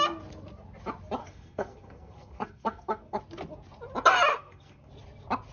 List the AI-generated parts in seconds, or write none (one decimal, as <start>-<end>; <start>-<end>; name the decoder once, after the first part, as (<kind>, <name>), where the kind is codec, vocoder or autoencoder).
1.2-3.2 (codec, SNAC); 4.3-4.9

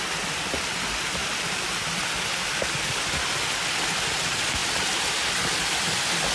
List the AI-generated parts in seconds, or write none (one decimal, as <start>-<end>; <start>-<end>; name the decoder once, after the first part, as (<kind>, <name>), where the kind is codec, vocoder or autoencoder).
1.2-2.2 (vocoder, BigVGAN v2)

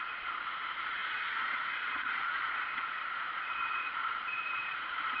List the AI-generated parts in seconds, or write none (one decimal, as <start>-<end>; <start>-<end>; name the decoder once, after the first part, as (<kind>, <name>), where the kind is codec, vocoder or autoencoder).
0.0-5.2 (vocoder, Vocos)

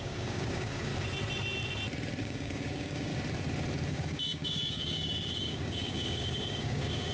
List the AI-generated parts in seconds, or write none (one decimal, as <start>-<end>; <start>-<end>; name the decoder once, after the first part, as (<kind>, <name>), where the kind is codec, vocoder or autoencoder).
0.0-0.9 (codec, DAC); 2.2-3.1; 3.9-7.1